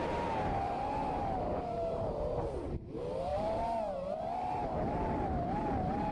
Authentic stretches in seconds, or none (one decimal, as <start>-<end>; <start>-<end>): none